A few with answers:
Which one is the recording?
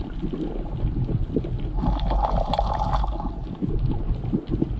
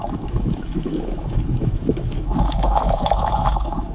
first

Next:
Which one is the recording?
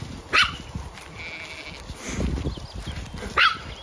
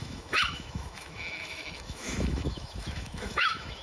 first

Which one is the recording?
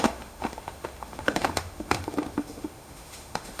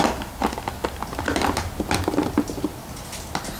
second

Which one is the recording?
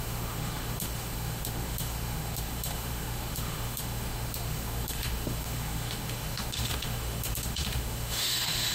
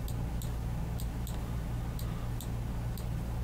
second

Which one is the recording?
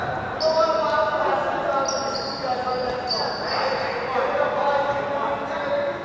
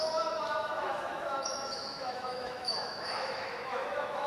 first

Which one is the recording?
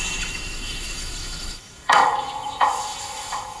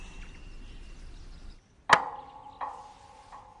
second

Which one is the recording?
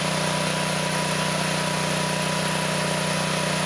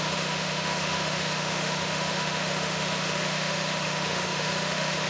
first